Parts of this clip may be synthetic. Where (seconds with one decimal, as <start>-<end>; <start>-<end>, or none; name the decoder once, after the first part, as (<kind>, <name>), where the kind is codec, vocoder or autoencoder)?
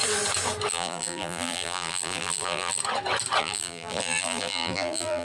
0.7-2.8 (vocoder, BigVGAN v2); 3.4-5.2